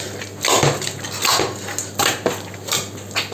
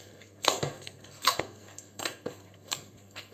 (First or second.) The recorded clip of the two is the first